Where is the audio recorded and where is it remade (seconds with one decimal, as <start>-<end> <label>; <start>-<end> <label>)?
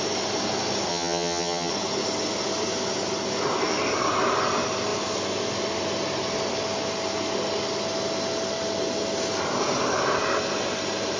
0.0-0.9 recorded; 0.9-1.7 remade; 1.7-11.2 recorded